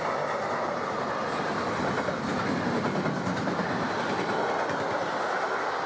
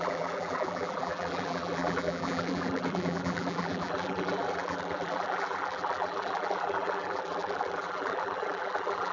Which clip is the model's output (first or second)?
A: second